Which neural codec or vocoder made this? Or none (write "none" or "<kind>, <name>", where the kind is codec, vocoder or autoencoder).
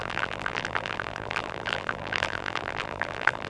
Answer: vocoder, BigVGAN v2